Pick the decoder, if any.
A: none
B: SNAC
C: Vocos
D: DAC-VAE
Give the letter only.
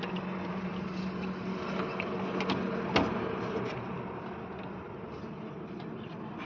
A